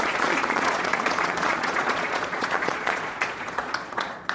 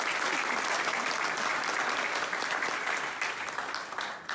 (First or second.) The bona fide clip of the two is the second